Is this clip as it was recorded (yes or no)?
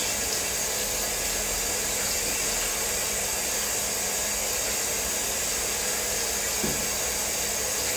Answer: yes